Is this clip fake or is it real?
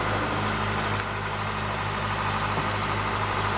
real